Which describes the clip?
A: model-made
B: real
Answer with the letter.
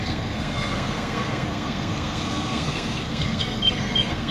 A